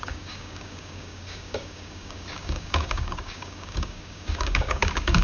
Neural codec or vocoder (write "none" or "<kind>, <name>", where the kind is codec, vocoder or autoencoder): codec, DAC